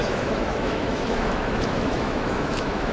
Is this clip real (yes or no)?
no